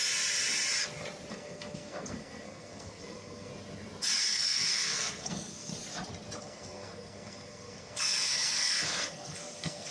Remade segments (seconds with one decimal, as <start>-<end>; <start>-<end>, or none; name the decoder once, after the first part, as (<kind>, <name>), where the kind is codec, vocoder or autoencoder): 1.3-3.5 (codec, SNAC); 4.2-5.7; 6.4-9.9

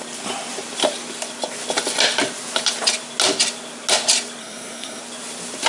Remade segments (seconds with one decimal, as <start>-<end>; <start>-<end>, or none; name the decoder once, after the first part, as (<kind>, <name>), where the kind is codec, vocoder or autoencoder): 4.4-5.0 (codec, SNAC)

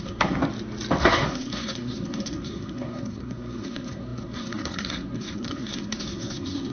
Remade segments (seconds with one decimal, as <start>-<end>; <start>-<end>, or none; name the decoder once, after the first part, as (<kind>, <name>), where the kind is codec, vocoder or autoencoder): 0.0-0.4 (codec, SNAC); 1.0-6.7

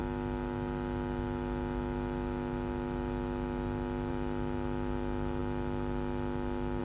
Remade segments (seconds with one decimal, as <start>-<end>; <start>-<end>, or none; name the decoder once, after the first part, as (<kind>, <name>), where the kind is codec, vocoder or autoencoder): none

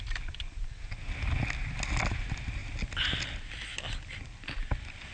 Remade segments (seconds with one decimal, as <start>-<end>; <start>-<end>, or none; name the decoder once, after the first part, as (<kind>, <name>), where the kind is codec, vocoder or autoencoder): none